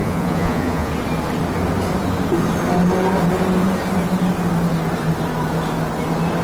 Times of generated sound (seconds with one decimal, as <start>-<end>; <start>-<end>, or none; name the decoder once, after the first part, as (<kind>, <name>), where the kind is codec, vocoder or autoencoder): 0.0-0.9 (vocoder, Vocos)